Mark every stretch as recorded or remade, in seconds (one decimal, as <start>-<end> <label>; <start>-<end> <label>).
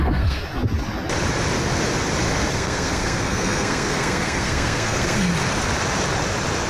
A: 0.0-0.4 remade; 0.4-2.5 recorded; 2.5-5.3 remade; 5.3-6.7 recorded